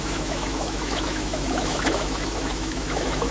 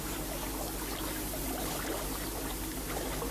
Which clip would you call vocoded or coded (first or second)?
first